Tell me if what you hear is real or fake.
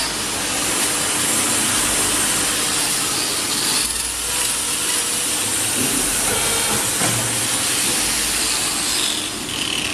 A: real